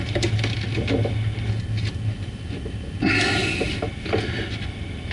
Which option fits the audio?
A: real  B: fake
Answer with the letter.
A